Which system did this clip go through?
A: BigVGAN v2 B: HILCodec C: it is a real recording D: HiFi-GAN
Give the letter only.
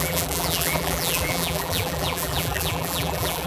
A